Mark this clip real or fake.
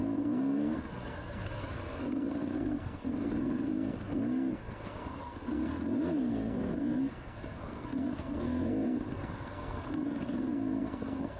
fake